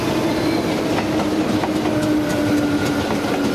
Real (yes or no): yes